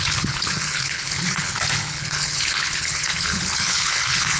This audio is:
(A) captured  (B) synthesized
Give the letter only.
B